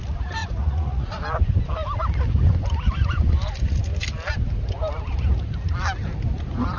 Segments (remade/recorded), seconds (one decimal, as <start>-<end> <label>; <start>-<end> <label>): 0.0-0.4 recorded; 0.4-1.2 remade; 1.2-6.8 recorded